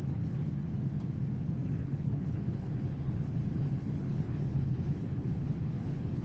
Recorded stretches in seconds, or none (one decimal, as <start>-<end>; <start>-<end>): 0.7-1.8